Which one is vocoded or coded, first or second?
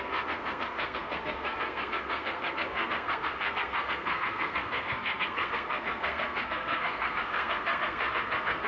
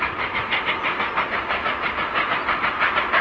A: first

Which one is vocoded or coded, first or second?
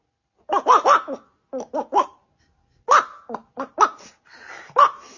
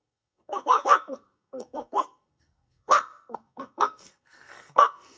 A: second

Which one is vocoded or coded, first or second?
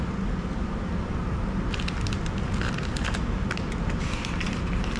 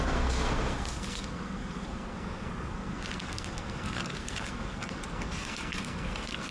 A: second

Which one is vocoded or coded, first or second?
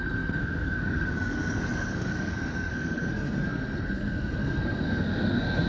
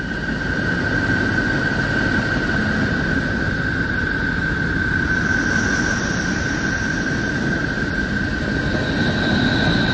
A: first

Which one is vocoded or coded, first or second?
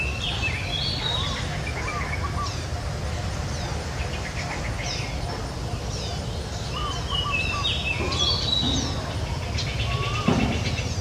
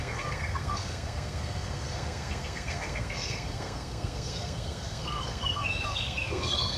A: second